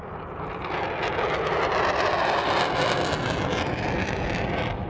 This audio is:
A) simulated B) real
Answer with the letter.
B